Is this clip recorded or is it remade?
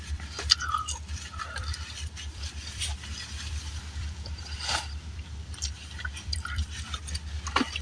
remade